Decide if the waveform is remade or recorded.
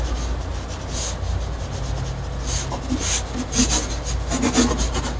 recorded